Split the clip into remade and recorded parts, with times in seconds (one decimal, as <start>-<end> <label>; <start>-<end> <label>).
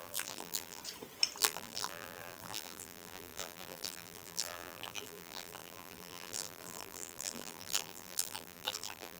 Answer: 0.0-0.8 remade; 0.8-1.4 recorded; 1.4-9.2 remade